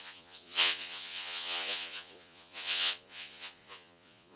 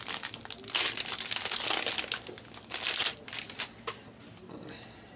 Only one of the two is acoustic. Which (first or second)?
second